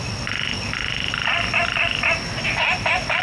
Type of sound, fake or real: real